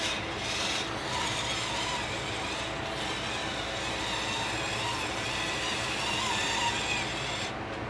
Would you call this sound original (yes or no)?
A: yes